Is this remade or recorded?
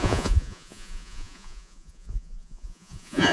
remade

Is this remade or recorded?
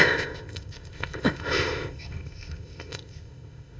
remade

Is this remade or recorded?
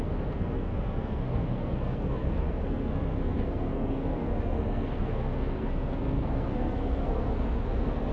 remade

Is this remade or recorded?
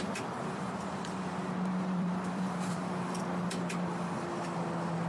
remade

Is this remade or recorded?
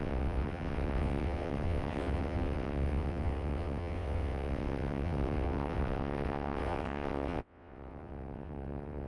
remade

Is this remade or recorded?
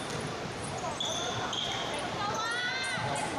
recorded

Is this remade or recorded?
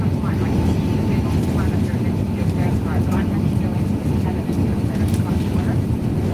recorded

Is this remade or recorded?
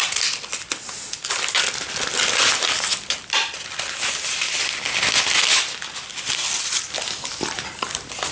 recorded